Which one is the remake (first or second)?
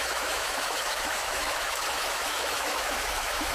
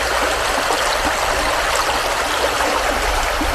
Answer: first